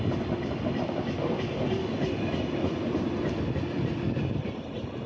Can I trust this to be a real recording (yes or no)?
yes